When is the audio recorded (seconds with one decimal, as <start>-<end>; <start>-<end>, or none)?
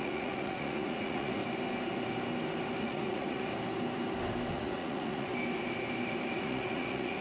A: 1.4-2.8; 3.5-4.5; 5.3-6.4